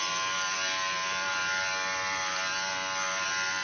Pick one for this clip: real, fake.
fake